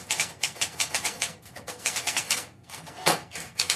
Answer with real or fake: fake